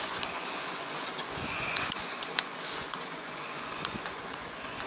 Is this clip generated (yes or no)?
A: yes